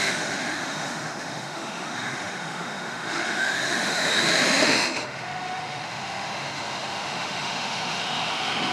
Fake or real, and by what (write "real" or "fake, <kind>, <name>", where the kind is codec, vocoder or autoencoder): fake, autoencoder, DAC-VAE